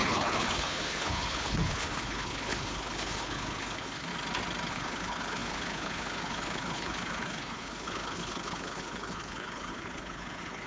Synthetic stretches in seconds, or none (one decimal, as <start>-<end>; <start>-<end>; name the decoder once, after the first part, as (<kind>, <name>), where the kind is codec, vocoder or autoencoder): 0.0-4.1 (codec, HILCodec); 4.7-10.7